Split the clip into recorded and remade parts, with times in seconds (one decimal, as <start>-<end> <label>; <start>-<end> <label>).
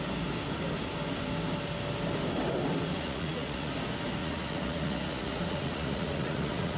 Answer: 0.0-2.9 recorded; 2.9-3.7 remade; 3.7-4.2 recorded; 4.2-6.8 remade